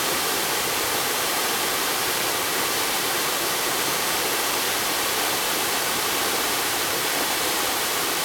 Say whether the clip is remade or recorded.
remade